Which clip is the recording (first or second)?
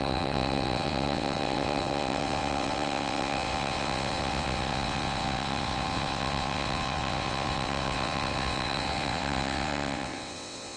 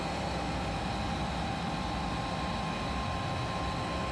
second